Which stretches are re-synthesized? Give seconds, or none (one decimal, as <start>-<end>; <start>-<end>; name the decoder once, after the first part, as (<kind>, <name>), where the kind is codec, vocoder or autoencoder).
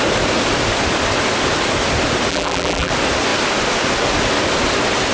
2.3-2.9 (vocoder, BigVGAN v2)